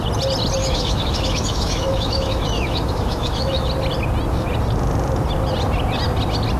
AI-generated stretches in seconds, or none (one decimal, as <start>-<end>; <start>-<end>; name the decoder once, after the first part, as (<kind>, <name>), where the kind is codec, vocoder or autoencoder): 0.6-3.7 (autoencoder, DAC-VAE)